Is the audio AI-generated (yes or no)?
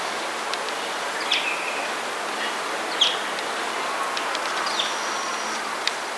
no